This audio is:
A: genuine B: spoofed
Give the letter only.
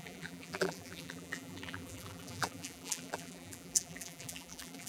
B